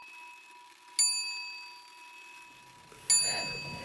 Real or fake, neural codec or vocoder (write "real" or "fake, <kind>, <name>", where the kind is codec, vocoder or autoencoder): real